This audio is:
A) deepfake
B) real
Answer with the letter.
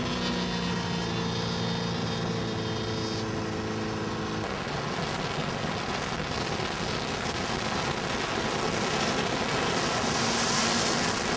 B